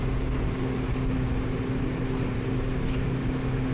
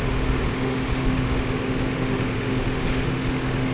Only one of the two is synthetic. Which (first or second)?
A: second